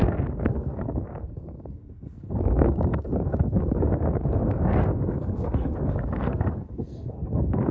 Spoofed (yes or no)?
yes